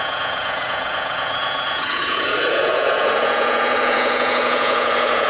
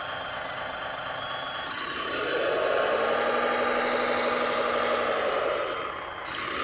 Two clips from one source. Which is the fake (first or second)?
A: first